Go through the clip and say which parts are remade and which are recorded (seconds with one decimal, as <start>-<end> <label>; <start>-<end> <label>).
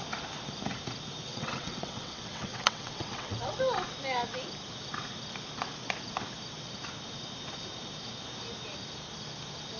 0.0-1.3 recorded; 1.3-3.6 remade; 3.6-9.8 recorded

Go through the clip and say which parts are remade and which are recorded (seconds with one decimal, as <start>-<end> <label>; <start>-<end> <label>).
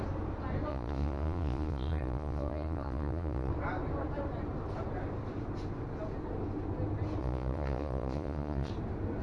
0.0-0.7 recorded; 0.7-3.5 remade; 3.5-7.2 recorded; 7.2-8.7 remade; 8.7-9.2 recorded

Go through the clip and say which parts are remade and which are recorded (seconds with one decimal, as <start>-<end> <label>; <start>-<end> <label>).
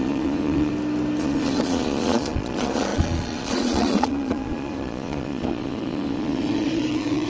0.0-0.7 remade; 0.7-1.2 recorded; 1.2-7.3 remade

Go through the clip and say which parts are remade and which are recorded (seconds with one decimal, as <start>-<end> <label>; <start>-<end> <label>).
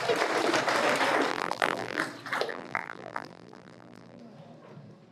0.0-1.3 recorded; 1.3-2.0 remade; 2.0-2.5 recorded; 2.5-4.2 remade; 4.2-5.1 recorded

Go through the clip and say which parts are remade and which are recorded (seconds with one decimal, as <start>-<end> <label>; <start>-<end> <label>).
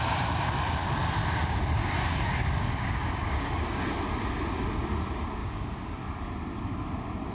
0.0-1.8 recorded; 1.8-3.8 remade; 3.8-5.4 recorded; 5.4-6.0 remade; 6.0-7.3 recorded